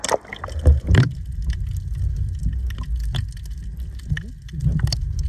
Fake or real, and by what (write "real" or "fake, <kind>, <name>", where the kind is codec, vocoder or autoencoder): real